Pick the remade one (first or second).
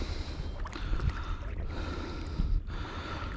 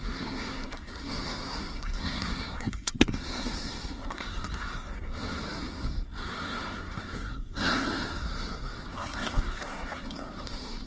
second